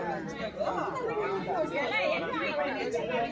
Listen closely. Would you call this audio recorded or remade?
recorded